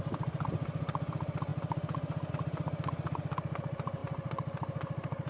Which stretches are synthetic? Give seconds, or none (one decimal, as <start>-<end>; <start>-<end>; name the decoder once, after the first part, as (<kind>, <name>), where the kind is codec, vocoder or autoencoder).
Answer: none